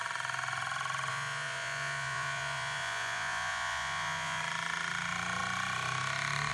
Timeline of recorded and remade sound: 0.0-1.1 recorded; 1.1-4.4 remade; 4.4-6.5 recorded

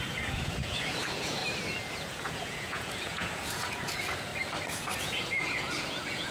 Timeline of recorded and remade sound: 0.0-1.4 remade; 1.4-1.9 recorded; 1.9-4.3 remade; 4.3-5.0 recorded; 5.0-6.3 remade

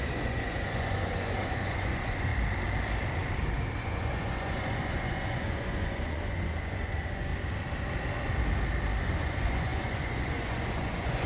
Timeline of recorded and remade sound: 0.0-2.3 remade; 2.3-3.8 recorded; 3.8-7.3 remade; 7.3-9.0 recorded; 9.0-11.3 remade

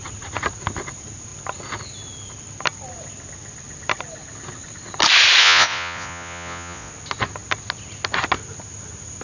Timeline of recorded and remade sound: 0.0-5.4 recorded; 5.4-6.9 remade; 6.9-9.2 recorded

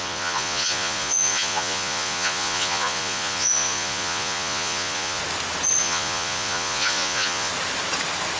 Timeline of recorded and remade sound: 0.0-5.2 remade; 5.2-5.8 recorded; 5.8-7.5 remade; 7.5-8.4 recorded

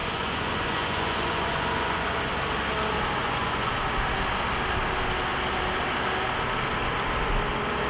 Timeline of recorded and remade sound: 0.0-2.3 remade; 2.3-3.2 recorded; 3.2-3.7 remade; 3.7-7.9 recorded